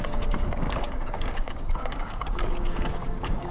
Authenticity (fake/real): fake